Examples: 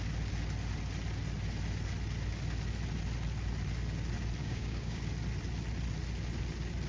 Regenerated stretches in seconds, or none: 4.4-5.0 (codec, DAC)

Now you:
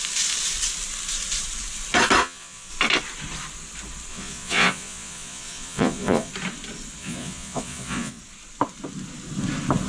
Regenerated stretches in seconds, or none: 2.2-2.7 (vocoder, Vocos); 4.1-6.3; 7.0-8.2

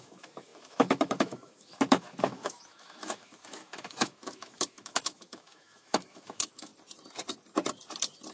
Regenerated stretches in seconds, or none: 0.0-6.7 (autoencoder, DAC-VAE)

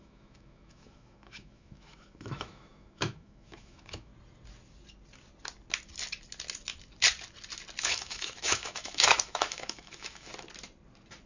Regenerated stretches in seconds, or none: 0.0-4.1 (autoencoder, DAC-VAE); 7.8-10.3

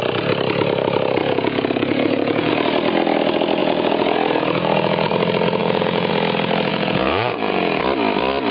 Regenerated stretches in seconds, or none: 1.2-2.5 (vocoder, Vocos); 3.6-5.1; 5.6-6.1; 6.7-7.8

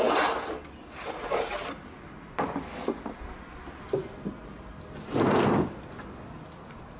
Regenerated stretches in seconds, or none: none

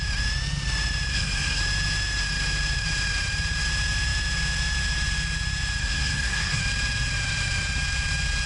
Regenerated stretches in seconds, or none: 1.1-1.6 (codec, SNAC); 5.8-6.6

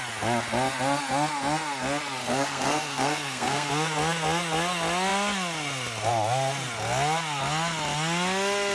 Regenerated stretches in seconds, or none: 2.2-3.7 (codec, SNAC)